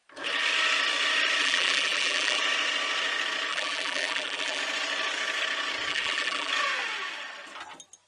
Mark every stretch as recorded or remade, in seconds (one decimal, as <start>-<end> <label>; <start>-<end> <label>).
0.0-1.4 recorded; 1.4-2.4 remade; 2.4-3.5 recorded; 3.5-4.6 remade; 4.6-5.9 recorded; 5.9-6.5 remade; 6.5-8.1 recorded